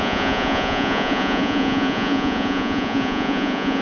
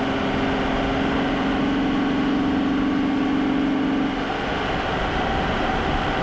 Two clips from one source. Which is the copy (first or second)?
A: first